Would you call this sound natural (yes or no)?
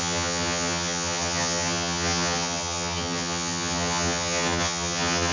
no